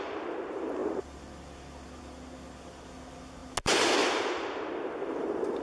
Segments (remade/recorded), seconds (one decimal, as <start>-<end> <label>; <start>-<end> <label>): 0.0-5.6 recorded